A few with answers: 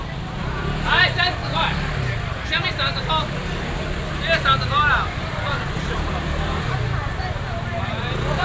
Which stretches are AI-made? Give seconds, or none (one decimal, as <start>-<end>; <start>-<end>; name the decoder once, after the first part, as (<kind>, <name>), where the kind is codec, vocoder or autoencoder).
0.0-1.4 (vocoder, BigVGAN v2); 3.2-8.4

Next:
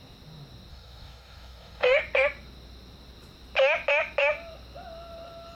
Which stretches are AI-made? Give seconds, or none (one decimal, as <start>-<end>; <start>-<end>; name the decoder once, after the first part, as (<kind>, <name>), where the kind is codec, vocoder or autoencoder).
0.7-2.0 (codec, DAC)

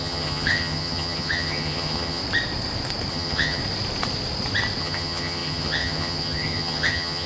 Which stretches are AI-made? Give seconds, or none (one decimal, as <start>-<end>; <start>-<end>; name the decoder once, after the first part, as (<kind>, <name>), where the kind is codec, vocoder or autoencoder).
0.0-2.2 (vocoder, HiFi-GAN); 3.1-3.6; 4.8-7.3